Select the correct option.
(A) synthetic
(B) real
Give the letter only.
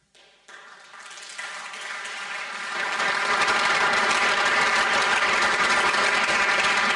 B